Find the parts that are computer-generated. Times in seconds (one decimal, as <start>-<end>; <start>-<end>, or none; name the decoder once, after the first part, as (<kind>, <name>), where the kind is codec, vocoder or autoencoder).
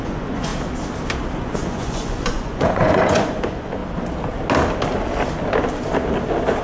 0.0-0.5 (vocoder, Vocos); 1.4-3.8